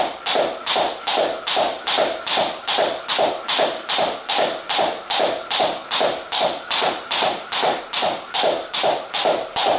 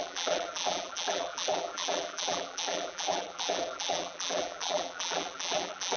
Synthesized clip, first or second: second